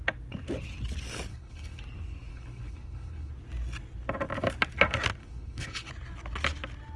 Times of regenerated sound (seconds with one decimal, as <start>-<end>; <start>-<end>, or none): 1.3-1.8; 2.3-3.3; 5.2-5.9